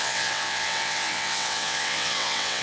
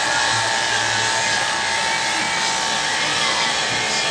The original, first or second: second